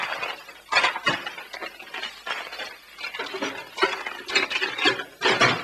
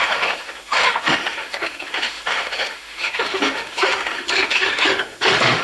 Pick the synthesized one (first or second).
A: second